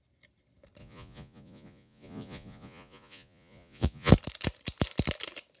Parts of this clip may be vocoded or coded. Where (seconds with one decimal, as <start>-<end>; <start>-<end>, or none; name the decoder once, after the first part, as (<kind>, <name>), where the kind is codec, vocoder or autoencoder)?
0.8-4.1 (vocoder, Vocos)

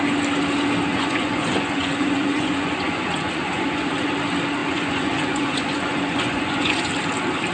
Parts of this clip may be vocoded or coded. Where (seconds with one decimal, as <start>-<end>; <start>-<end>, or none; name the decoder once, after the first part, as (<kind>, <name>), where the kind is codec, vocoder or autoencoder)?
0.9-4.1 (vocoder, Vocos); 4.6-6.9

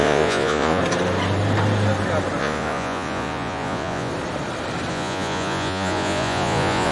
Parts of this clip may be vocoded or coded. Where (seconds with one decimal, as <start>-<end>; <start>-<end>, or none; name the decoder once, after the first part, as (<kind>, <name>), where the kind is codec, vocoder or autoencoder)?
0.0-0.8 (vocoder, Vocos); 2.4-4.1; 4.9-6.9

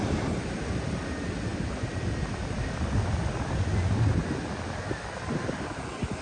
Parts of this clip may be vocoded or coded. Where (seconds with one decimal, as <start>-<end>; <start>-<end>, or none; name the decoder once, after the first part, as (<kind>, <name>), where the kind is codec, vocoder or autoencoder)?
none

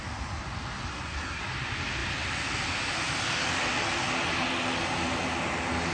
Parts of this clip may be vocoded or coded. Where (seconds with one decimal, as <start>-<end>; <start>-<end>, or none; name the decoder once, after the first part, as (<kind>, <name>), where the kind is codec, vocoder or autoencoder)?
0.9-1.4 (codec, SNAC)

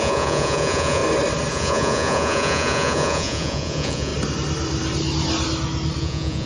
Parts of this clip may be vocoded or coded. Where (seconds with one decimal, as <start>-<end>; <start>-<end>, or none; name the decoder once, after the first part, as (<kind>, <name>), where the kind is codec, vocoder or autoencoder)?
0.0-1.0 (vocoder, Vocos); 1.5-4.1; 6.0-6.5